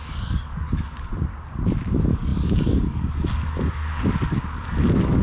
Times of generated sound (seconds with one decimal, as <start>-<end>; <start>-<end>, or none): 0.0-1.1; 1.9-5.2